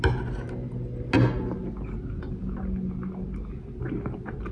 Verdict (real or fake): real